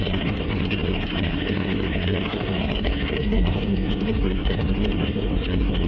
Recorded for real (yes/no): no